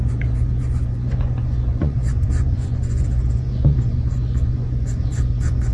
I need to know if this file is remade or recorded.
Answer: remade